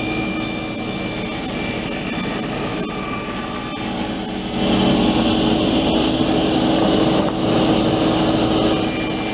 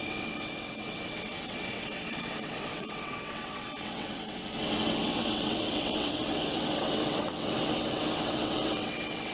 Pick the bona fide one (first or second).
first